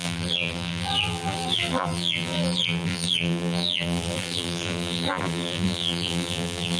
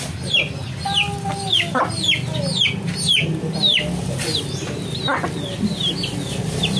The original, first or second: second